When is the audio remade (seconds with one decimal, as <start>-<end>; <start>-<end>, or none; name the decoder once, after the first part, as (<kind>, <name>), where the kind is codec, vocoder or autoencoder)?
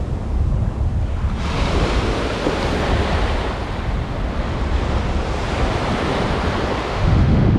6.8-7.6 (autoencoder, DAC-VAE)